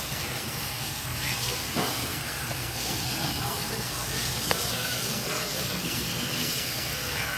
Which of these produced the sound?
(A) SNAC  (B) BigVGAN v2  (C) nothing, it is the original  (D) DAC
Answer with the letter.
A